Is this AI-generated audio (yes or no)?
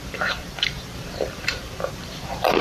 yes